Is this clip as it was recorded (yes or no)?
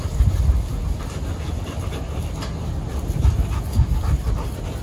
yes